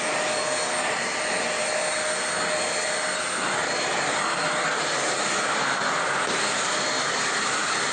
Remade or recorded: recorded